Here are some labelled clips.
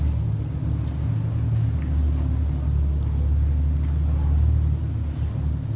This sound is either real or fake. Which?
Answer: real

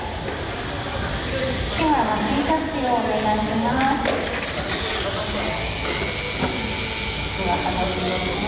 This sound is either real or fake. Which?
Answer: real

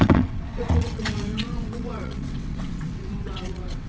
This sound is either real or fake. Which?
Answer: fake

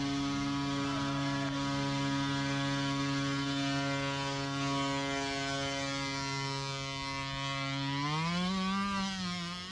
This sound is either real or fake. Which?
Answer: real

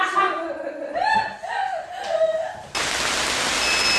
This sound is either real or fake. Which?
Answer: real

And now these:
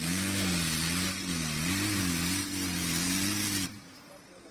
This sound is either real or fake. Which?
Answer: real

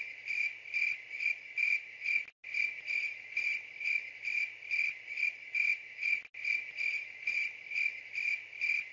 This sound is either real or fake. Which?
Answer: real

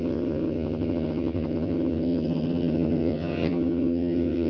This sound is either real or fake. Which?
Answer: fake